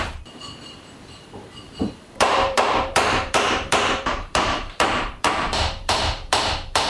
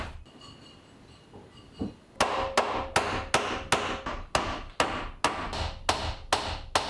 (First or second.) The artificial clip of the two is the first